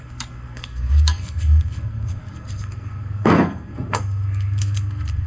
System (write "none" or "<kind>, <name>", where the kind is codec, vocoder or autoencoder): codec, SNAC